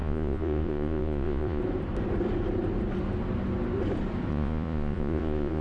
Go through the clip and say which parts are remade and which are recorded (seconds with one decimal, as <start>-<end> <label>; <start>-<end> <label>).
0.0-1.6 remade; 1.6-4.3 recorded; 4.3-5.6 remade